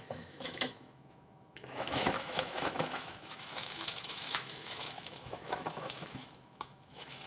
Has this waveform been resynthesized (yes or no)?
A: yes